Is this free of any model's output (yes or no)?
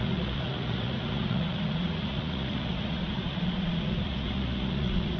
no